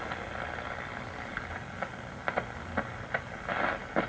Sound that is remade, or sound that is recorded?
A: recorded